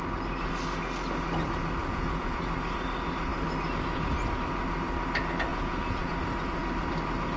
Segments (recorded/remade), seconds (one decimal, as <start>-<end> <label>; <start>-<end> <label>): 0.0-1.8 recorded; 1.8-2.4 remade; 2.4-5.5 recorded; 5.5-6.1 remade; 6.1-7.4 recorded